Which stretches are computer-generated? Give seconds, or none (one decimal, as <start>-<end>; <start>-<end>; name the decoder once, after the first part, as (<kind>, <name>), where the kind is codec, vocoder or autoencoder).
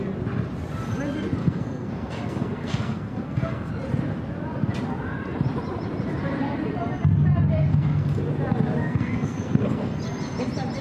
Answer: 1.4-3.7 (codec, SNAC); 7.7-8.2; 8.8-10.0